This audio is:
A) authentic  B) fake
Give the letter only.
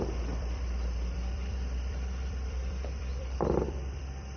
B